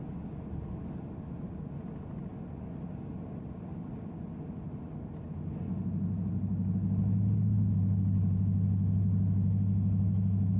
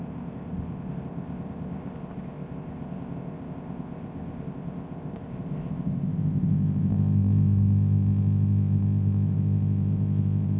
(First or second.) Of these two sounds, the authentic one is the first